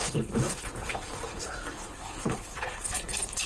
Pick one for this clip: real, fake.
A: fake